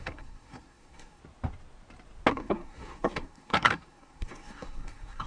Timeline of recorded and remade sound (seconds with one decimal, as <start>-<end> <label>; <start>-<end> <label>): 0.0-1.2 remade; 1.2-2.3 recorded; 2.3-5.3 remade